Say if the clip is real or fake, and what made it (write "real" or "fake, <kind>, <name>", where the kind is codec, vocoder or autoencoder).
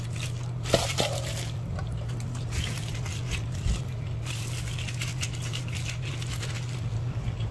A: real